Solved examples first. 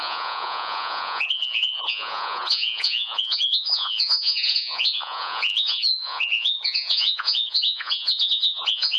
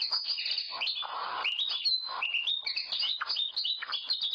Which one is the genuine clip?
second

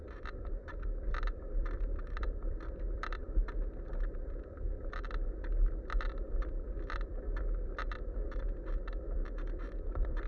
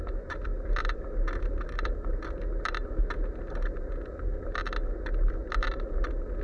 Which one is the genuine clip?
second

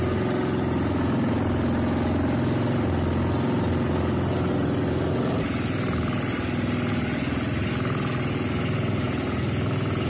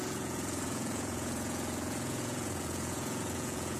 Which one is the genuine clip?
first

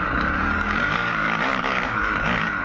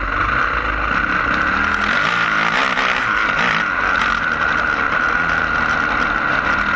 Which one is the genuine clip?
second